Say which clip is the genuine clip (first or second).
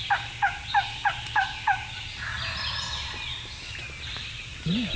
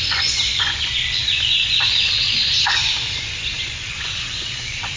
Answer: first